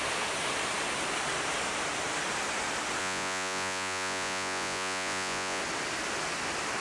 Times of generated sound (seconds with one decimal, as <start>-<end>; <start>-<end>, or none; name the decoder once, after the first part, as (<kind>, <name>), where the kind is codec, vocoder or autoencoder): 3.0-5.6 (vocoder, Vocos)

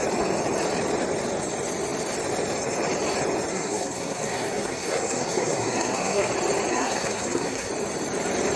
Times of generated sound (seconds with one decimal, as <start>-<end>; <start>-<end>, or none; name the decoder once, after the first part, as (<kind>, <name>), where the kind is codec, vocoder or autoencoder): 3.5-6.3 (codec, SNAC); 6.7-7.7

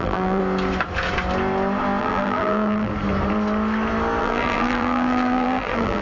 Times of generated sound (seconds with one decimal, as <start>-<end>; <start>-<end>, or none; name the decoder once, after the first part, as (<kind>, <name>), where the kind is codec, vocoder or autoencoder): 0.0-0.4 (vocoder, BigVGAN v2); 2.0-2.9; 4.2-6.0